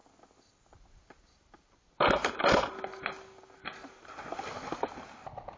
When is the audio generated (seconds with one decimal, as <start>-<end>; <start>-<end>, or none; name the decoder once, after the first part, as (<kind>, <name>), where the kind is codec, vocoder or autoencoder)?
none